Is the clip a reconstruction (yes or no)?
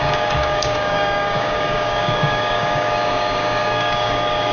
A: yes